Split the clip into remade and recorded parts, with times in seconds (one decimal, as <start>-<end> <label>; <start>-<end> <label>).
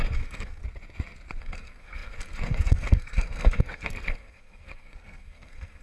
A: 0.0-0.6 remade; 0.6-1.4 recorded; 1.4-5.8 remade